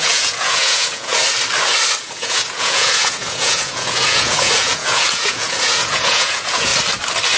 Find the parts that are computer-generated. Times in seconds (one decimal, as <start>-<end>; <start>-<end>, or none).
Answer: 0.0-1.1; 2.0-6.7